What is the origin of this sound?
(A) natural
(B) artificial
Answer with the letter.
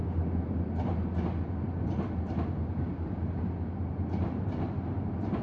A